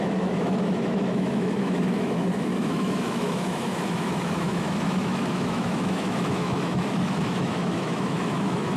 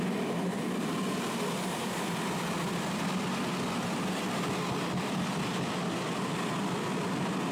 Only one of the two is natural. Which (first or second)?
second